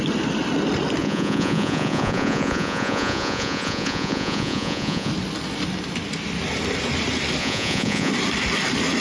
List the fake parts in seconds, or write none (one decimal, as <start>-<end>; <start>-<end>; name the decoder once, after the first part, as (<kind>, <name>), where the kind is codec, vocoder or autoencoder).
1.0-5.1 (vocoder, Vocos); 7.4-8.1